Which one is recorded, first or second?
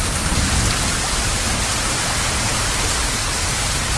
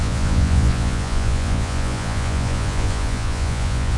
first